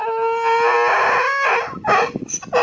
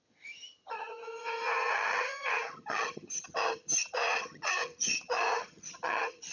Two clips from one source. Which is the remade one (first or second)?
second